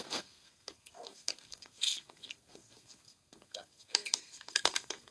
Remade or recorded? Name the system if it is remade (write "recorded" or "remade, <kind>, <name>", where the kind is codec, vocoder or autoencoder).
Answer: remade, codec, SNAC